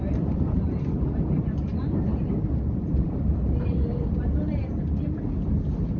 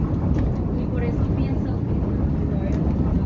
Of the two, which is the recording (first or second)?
second